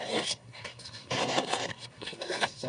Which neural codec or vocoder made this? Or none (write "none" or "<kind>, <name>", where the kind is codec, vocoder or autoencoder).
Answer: codec, SNAC